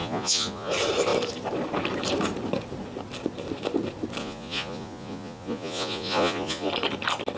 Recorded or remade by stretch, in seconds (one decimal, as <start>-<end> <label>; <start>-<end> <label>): 0.0-0.7 remade; 0.7-4.2 recorded; 4.2-6.7 remade; 6.7-7.4 recorded